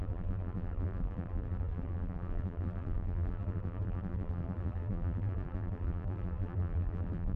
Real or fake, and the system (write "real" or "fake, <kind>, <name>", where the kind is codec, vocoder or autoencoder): fake, vocoder, BigVGAN v2